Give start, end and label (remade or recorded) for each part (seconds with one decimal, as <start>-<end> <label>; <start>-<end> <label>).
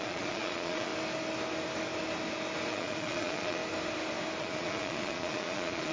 0.0-0.9 remade; 0.9-2.7 recorded; 2.7-3.6 remade; 3.6-4.4 recorded; 4.4-5.9 remade